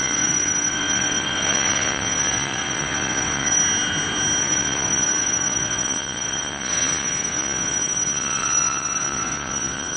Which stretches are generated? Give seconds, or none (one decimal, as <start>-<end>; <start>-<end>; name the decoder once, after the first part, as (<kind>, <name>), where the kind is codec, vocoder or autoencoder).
0.0-3.6 (vocoder, WaveNeXt); 4.4-10.0